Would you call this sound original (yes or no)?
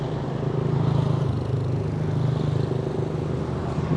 yes